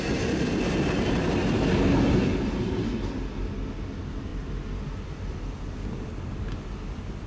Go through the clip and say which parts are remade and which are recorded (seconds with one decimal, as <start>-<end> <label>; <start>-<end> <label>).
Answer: 0.0-7.3 recorded